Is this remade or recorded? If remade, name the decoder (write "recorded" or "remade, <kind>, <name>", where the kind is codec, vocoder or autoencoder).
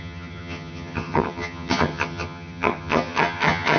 remade, vocoder, HiFi-GAN